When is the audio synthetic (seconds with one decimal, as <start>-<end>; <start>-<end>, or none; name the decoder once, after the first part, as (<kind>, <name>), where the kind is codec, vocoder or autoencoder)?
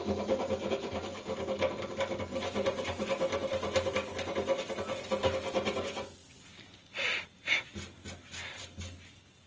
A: 2.3-3.1 (vocoder, BigVGAN v2)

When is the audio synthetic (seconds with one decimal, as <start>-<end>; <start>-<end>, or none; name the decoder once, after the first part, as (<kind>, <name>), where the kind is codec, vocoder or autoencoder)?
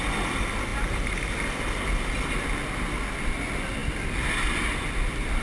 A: none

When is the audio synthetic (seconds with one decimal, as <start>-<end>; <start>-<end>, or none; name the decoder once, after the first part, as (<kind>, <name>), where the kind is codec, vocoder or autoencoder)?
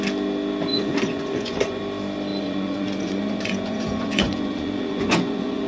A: 0.7-1.8 (vocoder, Vocos); 2.3-5.7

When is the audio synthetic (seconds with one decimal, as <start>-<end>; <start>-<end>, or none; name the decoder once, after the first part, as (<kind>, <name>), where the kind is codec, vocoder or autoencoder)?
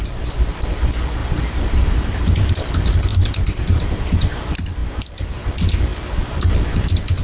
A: 1.2-2.5 (vocoder, BigVGAN v2); 3.1-4.0; 4.8-5.5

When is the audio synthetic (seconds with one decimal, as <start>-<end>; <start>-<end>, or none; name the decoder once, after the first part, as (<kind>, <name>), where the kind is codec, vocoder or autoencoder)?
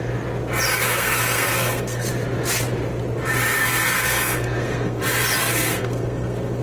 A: 0.7-2.1 (codec, SNAC); 3.6-5.0; 5.5-6.6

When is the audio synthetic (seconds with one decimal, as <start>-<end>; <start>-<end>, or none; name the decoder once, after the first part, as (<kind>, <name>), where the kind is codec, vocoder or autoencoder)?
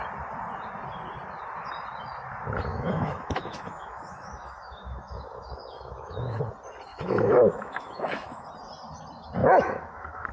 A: 2.7-6.4 (autoencoder, DAC-VAE); 6.9-8.5; 9.4-10.3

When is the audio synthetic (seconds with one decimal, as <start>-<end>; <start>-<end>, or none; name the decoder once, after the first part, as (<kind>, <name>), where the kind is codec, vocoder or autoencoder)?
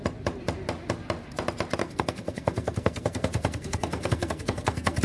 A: 1.8-5.0 (codec, SNAC)